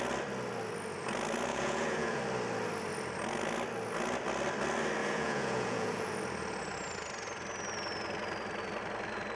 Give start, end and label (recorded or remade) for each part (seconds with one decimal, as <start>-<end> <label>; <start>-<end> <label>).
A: 0.0-1.5 recorded; 1.5-2.2 remade; 2.2-5.0 recorded; 5.0-6.1 remade; 6.1-9.4 recorded